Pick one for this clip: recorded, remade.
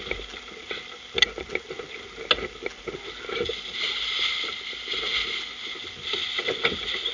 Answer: recorded